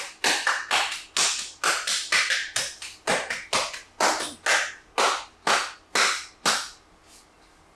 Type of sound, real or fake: real